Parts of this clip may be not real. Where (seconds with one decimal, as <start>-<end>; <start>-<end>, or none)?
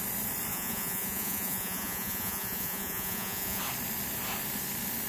0.5-3.6